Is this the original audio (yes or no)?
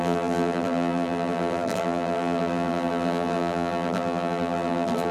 no